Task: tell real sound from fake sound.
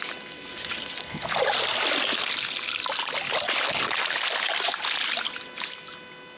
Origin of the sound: real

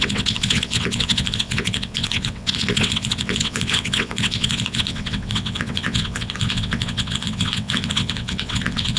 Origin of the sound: fake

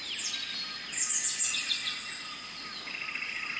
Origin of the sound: real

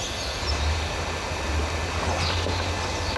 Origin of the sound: real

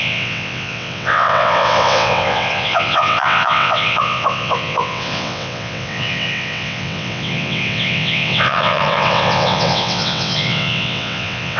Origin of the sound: fake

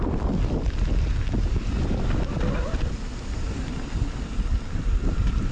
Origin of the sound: real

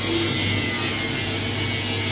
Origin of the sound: real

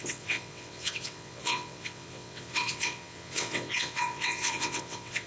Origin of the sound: fake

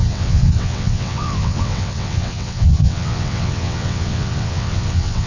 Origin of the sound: fake